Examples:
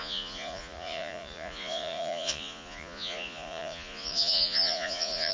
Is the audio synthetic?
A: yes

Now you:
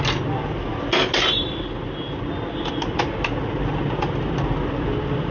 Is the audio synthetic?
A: no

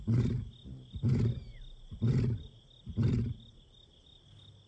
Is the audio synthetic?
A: no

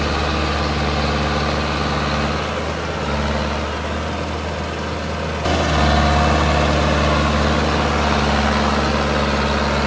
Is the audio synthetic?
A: no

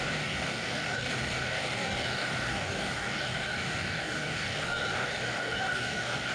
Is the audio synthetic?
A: yes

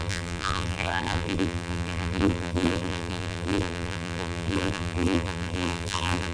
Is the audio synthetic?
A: yes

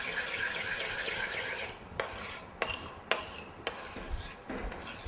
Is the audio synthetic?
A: no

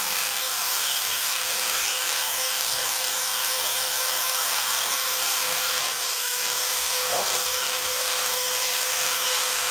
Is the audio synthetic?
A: yes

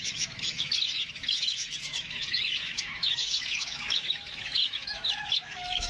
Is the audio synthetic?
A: yes